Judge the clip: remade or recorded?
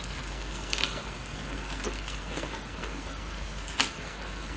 remade